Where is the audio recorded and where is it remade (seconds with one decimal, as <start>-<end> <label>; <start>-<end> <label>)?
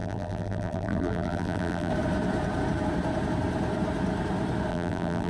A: 0.0-1.9 remade; 1.9-4.7 recorded; 4.7-5.3 remade